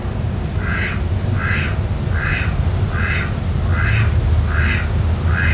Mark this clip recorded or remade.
recorded